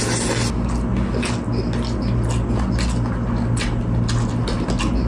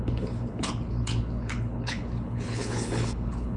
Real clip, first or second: first